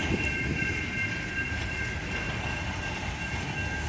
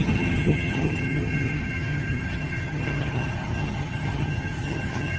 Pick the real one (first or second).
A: first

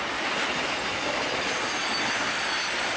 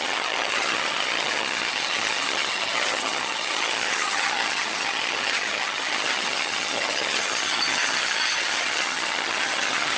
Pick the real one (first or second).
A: first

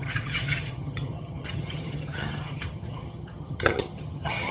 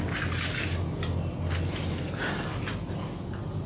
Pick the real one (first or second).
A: second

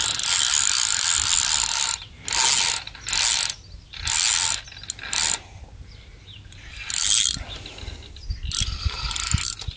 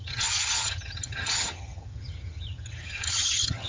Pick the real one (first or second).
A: first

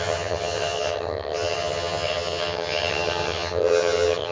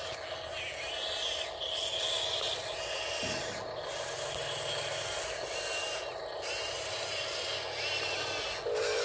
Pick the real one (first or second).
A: second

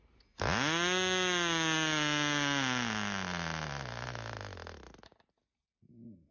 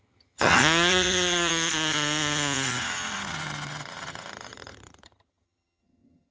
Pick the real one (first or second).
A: first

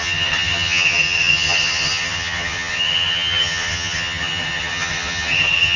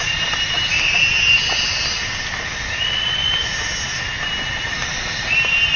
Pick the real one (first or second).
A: second